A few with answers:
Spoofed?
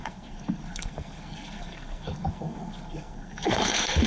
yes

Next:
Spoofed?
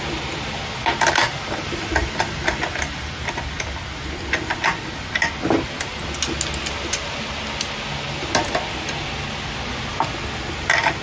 no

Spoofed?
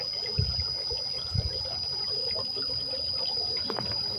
no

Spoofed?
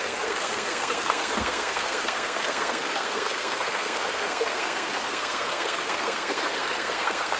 yes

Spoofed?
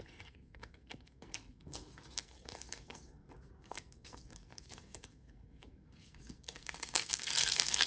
yes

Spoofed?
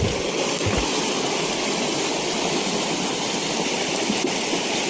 no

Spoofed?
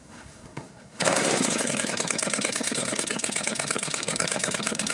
yes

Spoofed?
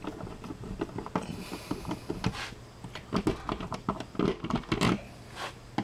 no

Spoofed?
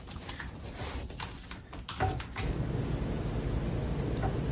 no